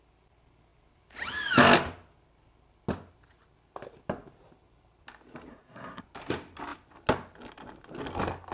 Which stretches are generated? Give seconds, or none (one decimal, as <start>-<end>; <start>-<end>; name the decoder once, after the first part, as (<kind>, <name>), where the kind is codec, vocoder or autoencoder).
5.5-6.0 (codec, SNAC)